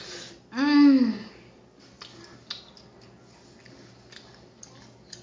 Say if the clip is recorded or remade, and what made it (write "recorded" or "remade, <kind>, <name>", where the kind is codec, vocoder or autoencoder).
recorded